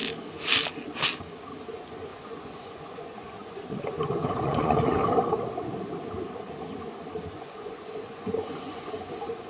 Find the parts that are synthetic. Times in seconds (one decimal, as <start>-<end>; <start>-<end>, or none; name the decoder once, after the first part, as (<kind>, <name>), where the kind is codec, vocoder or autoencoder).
1.7-5.0 (vocoder, Vocos); 7.3-9.5

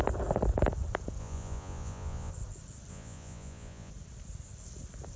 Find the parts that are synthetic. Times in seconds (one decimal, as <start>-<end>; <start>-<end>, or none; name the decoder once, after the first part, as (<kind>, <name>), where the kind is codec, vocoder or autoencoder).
1.2-2.3 (vocoder, Vocos); 2.9-3.9